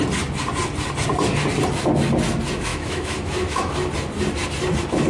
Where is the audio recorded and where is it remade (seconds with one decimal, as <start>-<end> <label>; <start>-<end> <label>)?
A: 0.0-2.7 recorded; 2.7-3.7 remade; 3.7-5.1 recorded

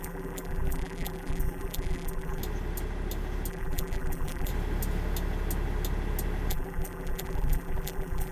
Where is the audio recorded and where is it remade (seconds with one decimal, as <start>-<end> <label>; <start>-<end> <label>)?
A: 0.0-2.4 remade; 2.4-3.5 recorded; 3.5-4.5 remade; 4.5-6.5 recorded; 6.5-8.3 remade

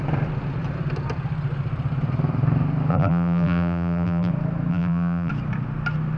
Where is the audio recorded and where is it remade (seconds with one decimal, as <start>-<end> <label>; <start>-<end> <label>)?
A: 0.0-2.9 recorded; 2.9-4.3 remade; 4.3-4.7 recorded; 4.7-5.3 remade; 5.3-6.2 recorded

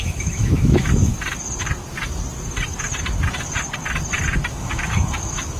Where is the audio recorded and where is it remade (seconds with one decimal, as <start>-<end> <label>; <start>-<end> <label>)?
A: 0.0-1.1 remade; 1.1-4.5 recorded; 4.5-5.6 remade

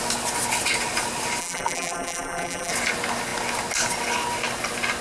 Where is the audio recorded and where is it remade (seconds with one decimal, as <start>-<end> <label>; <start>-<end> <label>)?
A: 0.0-1.4 recorded; 1.4-2.7 remade; 2.7-5.0 recorded

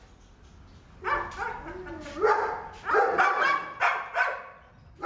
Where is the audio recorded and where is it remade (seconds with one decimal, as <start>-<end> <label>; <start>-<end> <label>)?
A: 0.0-5.1 recorded

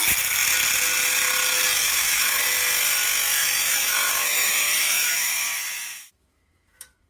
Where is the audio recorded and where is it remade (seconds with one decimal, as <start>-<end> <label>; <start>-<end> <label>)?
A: 0.0-1.8 recorded; 1.8-2.4 remade; 2.4-3.4 recorded; 3.4-7.1 remade

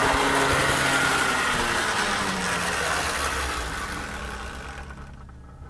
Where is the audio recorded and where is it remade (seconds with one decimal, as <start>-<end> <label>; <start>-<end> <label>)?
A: 0.0-5.7 recorded